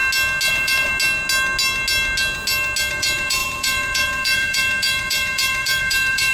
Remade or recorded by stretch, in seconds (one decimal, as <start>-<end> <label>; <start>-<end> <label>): 0.0-0.5 recorded; 0.5-0.9 remade; 0.9-2.9 recorded; 2.9-6.3 remade

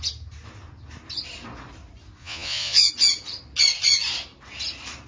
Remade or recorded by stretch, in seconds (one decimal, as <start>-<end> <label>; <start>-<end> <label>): 0.0-2.2 recorded; 2.2-2.9 remade; 2.9-5.1 recorded

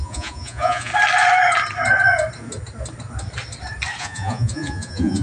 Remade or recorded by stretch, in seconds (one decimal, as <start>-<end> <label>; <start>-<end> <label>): 0.0-0.9 remade; 0.9-4.0 recorded; 4.0-5.2 remade

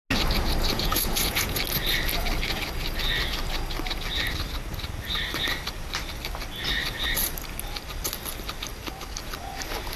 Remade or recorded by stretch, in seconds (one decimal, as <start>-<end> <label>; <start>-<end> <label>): 0.0-0.7 recorded; 0.7-1.6 remade; 1.6-10.0 recorded

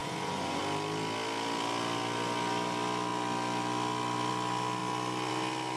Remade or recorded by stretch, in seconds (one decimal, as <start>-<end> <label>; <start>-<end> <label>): 0.0-0.6 remade; 0.6-5.8 recorded

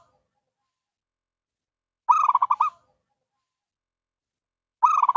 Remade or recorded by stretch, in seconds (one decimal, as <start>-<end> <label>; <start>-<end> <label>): 0.0-5.2 recorded